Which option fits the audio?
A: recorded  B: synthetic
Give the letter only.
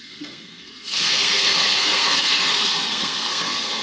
B